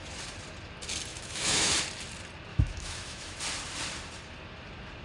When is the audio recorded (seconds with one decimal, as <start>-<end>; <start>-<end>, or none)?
0.0-1.1; 1.7-2.5; 3.4-5.0